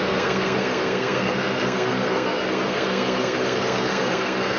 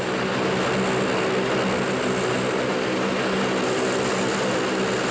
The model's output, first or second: first